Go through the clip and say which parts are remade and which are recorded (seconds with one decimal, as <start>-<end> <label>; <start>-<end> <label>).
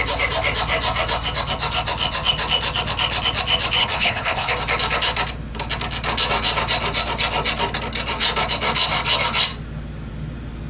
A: 0.0-3.8 recorded; 3.8-4.5 remade; 4.5-10.7 recorded